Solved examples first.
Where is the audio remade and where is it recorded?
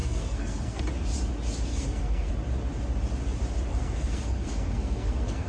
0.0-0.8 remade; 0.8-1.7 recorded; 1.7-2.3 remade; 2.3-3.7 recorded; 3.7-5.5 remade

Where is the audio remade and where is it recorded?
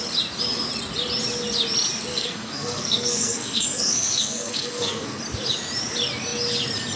0.0-2.1 recorded; 2.1-5.2 remade; 5.2-7.0 recorded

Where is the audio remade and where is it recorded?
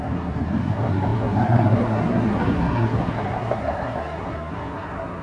0.0-5.2 remade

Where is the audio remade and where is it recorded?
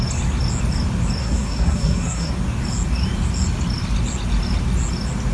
0.0-1.2 recorded; 1.2-2.3 remade; 2.3-5.3 recorded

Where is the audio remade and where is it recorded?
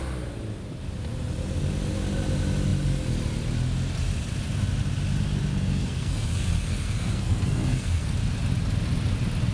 0.0-5.5 recorded; 5.5-8.1 remade; 8.1-9.5 recorded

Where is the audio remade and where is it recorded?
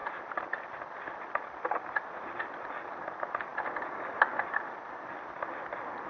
0.0-6.1 recorded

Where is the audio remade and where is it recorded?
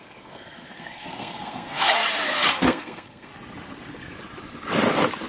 0.0-2.0 remade; 2.0-2.5 recorded; 2.5-3.3 remade; 3.3-5.3 recorded